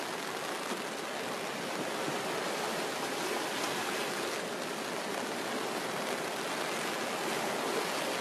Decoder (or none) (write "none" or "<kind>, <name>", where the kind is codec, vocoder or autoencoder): none